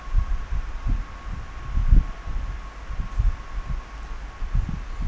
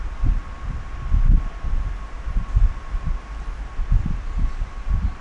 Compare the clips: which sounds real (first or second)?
first